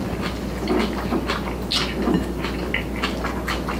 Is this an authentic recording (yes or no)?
yes